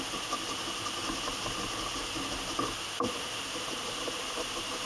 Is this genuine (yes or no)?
yes